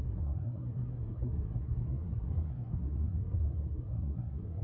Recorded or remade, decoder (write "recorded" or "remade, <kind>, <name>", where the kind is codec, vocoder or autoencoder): remade, codec, SNAC